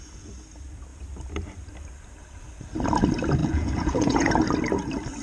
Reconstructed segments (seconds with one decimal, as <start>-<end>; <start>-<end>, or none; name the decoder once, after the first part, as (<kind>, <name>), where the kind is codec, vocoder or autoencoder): 3.4-4.3 (vocoder, Vocos)